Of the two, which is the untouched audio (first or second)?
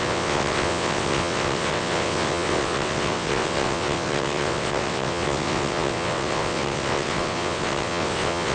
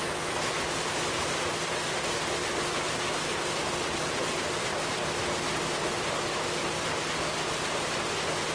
second